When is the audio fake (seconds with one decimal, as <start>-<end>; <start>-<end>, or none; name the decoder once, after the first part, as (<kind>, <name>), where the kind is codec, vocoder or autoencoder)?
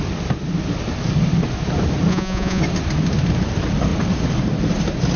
2.1-2.6 (vocoder, Vocos)